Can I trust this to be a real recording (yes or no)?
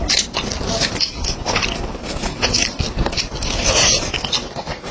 yes